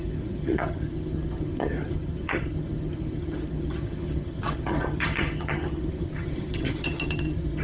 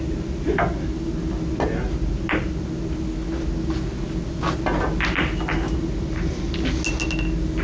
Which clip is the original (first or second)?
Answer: second